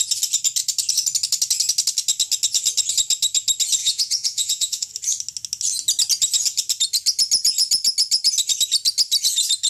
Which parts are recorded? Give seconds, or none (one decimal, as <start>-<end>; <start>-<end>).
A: 0.0-3.8; 4.9-9.7